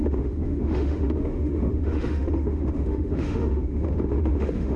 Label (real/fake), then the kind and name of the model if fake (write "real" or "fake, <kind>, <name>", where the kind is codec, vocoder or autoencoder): fake, autoencoder, DAC-VAE